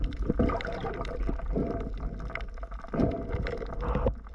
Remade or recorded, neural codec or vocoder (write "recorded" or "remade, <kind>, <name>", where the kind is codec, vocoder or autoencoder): recorded